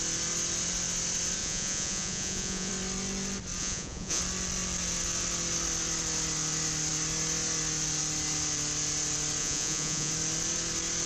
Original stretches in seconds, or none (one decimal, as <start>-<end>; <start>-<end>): 0.0-1.4; 2.7-3.6; 4.2-9.4; 10.1-11.1